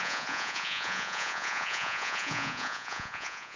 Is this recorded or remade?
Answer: remade